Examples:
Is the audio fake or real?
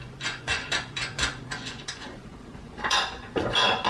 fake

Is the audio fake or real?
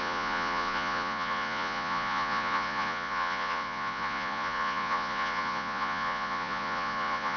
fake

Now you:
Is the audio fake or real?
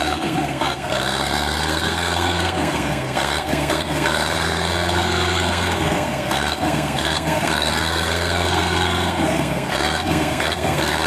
fake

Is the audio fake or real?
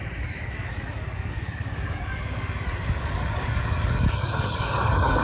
fake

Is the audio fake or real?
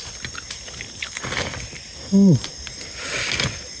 real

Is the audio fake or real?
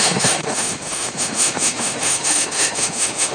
fake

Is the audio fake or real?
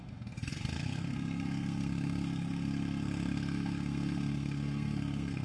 fake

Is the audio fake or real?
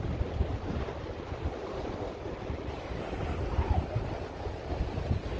real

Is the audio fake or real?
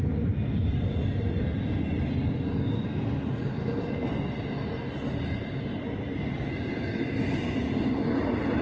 real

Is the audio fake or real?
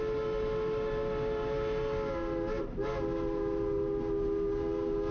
real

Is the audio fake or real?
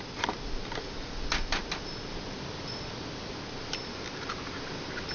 real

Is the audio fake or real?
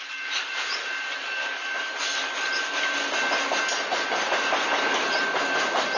real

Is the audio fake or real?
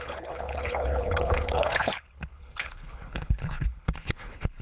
fake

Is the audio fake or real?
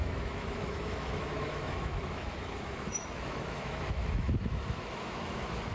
fake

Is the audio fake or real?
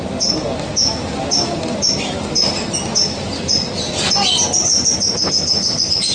real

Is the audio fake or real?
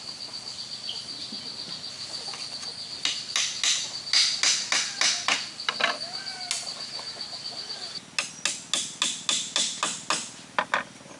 real